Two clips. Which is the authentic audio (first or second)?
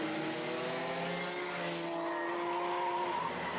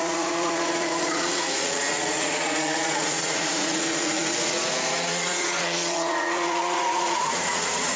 first